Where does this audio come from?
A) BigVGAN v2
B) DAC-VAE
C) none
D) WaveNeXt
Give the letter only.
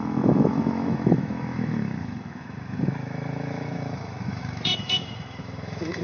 B